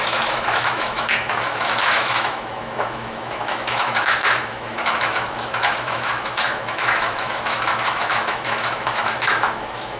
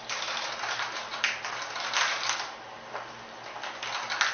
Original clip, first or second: second